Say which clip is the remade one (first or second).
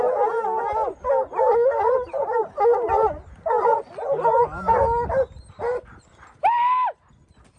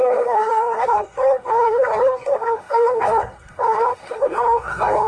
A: second